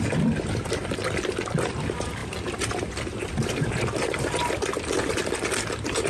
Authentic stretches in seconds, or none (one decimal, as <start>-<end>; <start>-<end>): 0.0-6.1